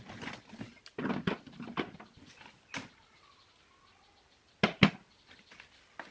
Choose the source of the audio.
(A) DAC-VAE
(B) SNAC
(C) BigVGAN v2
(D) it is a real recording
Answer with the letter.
D